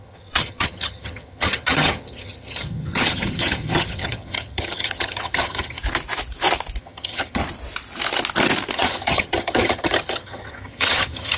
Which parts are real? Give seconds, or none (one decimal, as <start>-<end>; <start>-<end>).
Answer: 5.8-6.8; 7.4-8.7